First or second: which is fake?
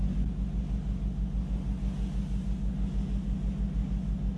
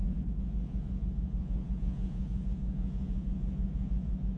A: second